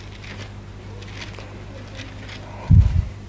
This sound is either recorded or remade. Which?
recorded